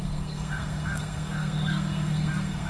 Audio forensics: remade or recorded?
remade